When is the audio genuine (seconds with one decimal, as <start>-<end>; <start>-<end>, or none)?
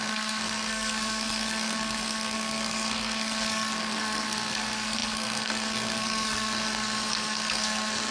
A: none